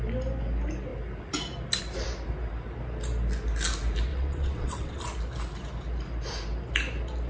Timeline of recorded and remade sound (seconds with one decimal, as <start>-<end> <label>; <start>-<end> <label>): 0.0-4.1 recorded; 4.1-5.0 remade; 5.0-7.3 recorded